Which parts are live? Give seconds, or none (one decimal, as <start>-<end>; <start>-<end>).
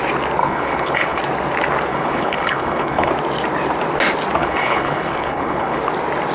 0.0-0.4; 1.2-1.9; 3.1-4.4; 5.8-6.3